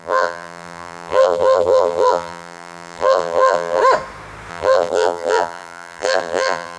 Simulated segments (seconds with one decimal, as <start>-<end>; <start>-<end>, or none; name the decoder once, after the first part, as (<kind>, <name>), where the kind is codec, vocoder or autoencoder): 0.0-3.8 (vocoder, BigVGAN v2); 4.5-6.8